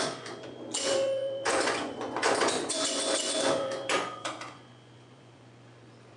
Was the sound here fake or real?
fake